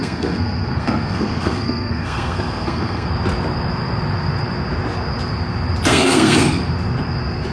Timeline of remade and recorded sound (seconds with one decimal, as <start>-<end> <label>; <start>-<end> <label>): 0.0-3.1 remade; 3.1-5.9 recorded; 5.9-6.6 remade; 6.6-7.5 recorded

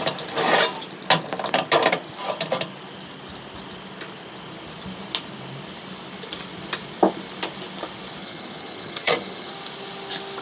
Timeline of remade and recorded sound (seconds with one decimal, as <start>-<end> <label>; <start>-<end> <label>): 0.0-8.2 recorded; 8.2-9.5 remade; 9.5-10.4 recorded

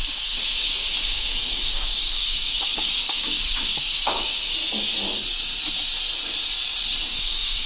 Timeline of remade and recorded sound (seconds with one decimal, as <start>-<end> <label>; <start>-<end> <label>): 0.0-4.6 remade; 4.6-7.0 recorded; 7.0-7.7 remade